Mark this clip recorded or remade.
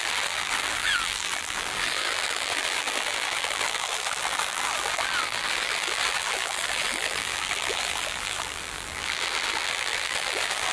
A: remade